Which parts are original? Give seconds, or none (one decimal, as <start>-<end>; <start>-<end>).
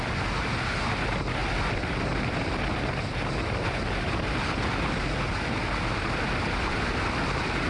0.0-1.4; 5.6-7.7